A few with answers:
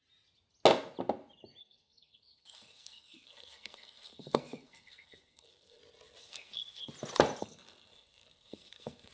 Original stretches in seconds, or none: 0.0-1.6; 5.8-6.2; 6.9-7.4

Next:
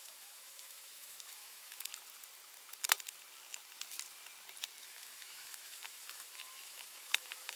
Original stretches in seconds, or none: 1.9-4.8

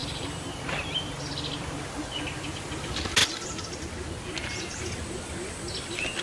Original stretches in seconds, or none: 0.6-6.2

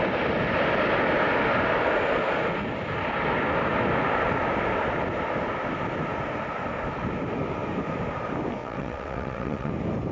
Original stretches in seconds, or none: 0.0-8.6; 9.7-10.1

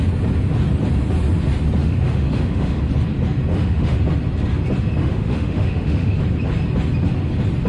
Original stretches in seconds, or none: 0.0-1.8; 2.8-3.5; 4.0-5.0; 6.2-7.7

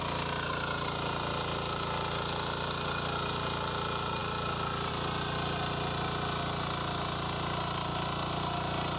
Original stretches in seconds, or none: 0.0-9.0

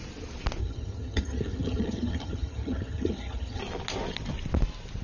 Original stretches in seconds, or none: 0.0-0.6; 3.6-5.0

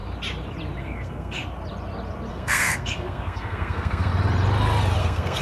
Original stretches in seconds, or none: 0.0-0.8; 1.4-2.3; 4.1-5.0